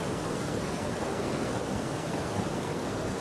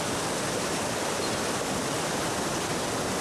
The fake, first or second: first